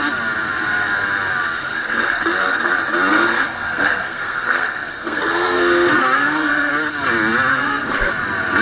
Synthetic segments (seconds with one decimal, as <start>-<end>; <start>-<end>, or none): 1.6-2.7; 3.1-6.7; 7.5-8.1